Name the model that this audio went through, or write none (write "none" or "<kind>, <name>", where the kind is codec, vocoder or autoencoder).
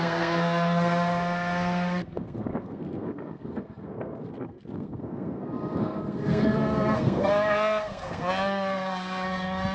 codec, SNAC